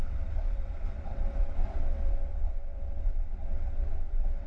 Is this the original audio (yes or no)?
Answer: no